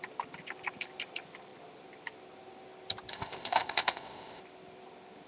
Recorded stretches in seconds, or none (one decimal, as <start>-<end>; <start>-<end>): 0.0-3.1; 4.4-5.3